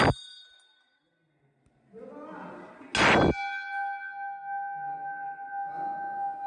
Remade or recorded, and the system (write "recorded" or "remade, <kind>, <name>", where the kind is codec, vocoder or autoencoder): recorded